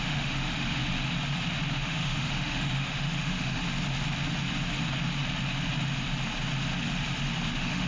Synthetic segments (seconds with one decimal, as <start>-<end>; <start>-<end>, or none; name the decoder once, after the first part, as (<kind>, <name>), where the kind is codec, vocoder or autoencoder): 0.0-0.8 (autoencoder, DAC-VAE); 1.7-3.6; 7.5-7.9